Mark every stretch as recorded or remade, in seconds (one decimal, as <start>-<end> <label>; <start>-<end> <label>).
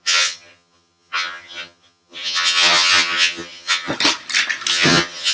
0.0-3.9 remade; 3.9-4.7 recorded; 4.7-5.3 remade